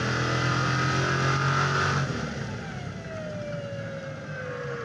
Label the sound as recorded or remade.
recorded